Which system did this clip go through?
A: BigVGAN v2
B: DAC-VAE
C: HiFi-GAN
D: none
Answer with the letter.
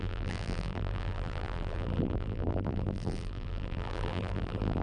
A